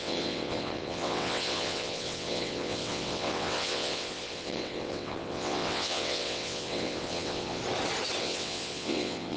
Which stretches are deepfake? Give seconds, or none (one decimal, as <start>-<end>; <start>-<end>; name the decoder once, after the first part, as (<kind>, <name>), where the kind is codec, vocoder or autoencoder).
0.0-7.6 (vocoder, WaveNeXt); 8.2-9.4